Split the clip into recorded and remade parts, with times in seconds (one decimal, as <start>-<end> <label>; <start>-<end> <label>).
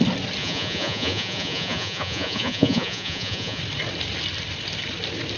0.0-0.4 recorded; 0.4-3.6 remade; 3.6-5.4 recorded